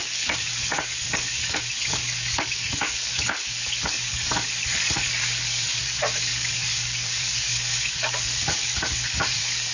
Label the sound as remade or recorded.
remade